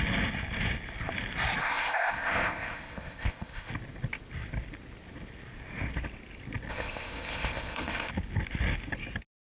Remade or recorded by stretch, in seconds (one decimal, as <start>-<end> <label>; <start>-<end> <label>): 0.0-1.6 recorded; 1.6-3.7 remade; 3.7-6.7 recorded; 6.7-8.1 remade; 8.1-9.4 recorded